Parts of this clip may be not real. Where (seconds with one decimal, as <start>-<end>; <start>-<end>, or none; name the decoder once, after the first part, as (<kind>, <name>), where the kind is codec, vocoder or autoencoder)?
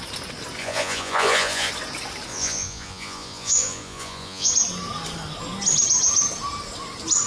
0.6-1.7 (vocoder, Vocos); 2.3-4.5